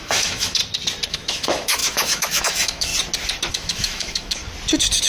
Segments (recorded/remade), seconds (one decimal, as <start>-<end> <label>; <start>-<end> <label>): 0.0-0.6 remade; 0.6-1.1 recorded; 1.1-2.9 remade; 2.9-3.5 recorded; 3.5-4.4 remade; 4.4-5.1 recorded